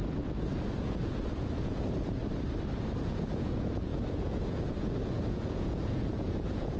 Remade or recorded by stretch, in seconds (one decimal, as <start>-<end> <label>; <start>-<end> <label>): 0.0-0.9 recorded; 0.9-2.2 remade; 2.2-3.0 recorded; 3.0-6.8 remade